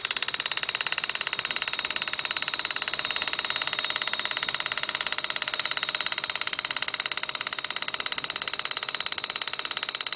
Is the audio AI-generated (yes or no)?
no